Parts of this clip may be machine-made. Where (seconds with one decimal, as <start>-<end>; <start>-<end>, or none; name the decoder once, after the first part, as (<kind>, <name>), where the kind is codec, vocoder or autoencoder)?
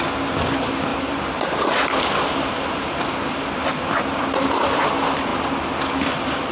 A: 0.9-4.8 (vocoder, BigVGAN v2)